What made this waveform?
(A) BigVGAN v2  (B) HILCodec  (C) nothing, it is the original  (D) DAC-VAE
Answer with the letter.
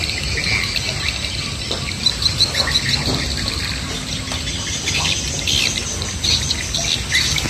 C